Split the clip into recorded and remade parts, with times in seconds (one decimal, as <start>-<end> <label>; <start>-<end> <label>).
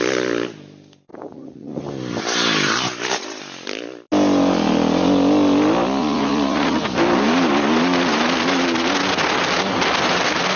0.0-1.1 recorded; 1.1-1.8 remade; 1.8-6.0 recorded; 6.0-6.8 remade; 6.8-10.6 recorded